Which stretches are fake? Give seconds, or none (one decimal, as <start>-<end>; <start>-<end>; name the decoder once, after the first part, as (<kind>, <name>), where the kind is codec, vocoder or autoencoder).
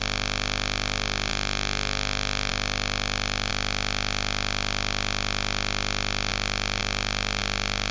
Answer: none